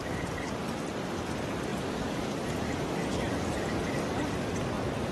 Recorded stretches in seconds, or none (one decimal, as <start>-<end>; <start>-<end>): 0.0-5.1